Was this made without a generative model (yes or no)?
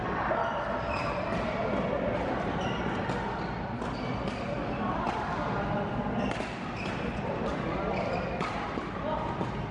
yes